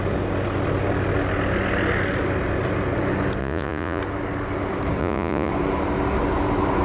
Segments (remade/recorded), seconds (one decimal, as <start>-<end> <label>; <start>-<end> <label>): 0.0-3.4 recorded; 3.4-4.0 remade; 4.0-5.0 recorded; 5.0-5.5 remade; 5.5-6.8 recorded